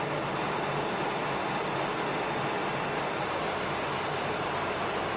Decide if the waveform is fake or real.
real